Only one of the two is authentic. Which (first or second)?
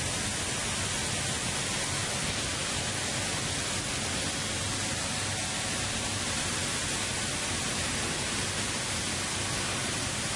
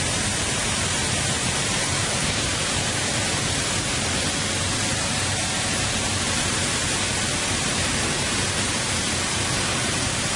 first